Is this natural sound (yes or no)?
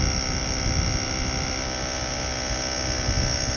yes